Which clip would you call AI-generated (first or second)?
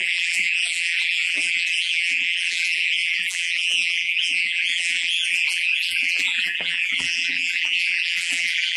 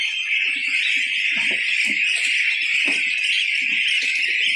first